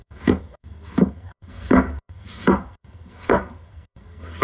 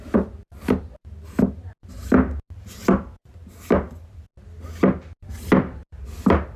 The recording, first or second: second